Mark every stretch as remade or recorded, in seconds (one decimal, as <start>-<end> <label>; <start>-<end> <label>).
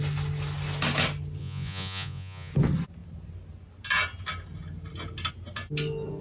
0.0-1.4 recorded; 1.4-2.5 remade; 2.5-6.2 recorded